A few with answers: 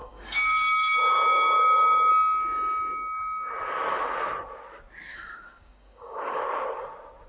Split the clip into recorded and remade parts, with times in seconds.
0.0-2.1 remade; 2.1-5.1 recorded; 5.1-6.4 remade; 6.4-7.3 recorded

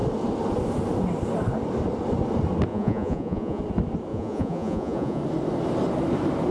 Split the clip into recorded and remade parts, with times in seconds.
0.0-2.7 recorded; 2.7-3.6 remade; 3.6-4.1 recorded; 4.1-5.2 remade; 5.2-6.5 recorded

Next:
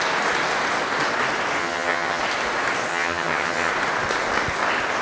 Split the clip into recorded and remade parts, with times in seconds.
0.0-1.6 recorded; 1.6-2.2 remade; 2.2-2.9 recorded; 2.9-3.7 remade; 3.7-5.0 recorded

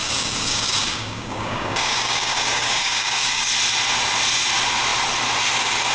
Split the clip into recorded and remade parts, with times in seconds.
0.0-3.5 remade; 3.5-5.9 recorded

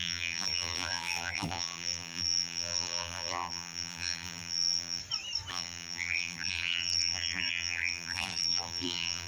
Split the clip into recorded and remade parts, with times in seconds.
0.0-5.0 remade; 5.0-5.5 recorded; 5.5-9.3 remade

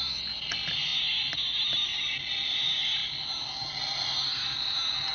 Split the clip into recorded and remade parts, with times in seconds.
0.0-3.0 recorded; 3.0-3.7 remade; 3.7-5.1 recorded

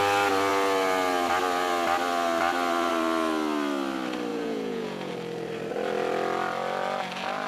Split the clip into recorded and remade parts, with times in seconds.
0.0-4.3 recorded; 4.3-5.1 remade; 5.1-7.5 recorded

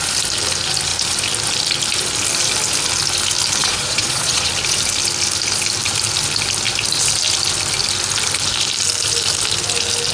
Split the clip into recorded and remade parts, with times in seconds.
0.0-3.6 recorded; 3.6-4.5 remade; 4.5-10.1 recorded